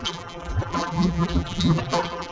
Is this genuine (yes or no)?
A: no